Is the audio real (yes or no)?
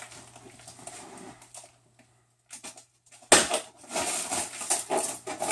yes